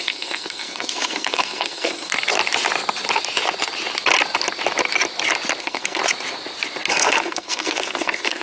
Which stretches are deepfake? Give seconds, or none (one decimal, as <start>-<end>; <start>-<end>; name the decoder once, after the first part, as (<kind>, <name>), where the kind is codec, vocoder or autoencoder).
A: 0.0-2.1 (codec, SNAC); 5.6-6.0; 6.9-8.4